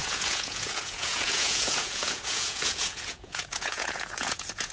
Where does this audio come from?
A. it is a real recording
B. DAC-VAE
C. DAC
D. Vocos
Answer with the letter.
D